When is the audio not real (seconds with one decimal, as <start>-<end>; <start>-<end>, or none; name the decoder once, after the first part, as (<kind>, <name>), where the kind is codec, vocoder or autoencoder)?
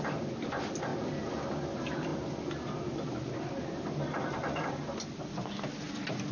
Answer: none